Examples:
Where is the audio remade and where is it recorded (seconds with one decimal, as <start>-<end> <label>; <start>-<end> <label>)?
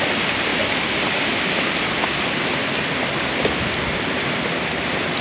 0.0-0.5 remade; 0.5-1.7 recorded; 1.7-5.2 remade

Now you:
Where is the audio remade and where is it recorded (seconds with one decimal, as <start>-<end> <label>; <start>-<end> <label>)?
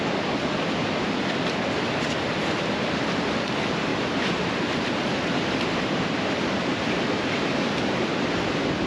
0.0-3.9 recorded; 3.9-8.1 remade; 8.1-8.9 recorded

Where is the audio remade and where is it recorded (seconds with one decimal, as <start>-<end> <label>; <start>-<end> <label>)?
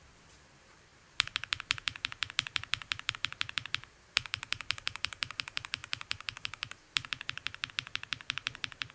0.0-8.9 remade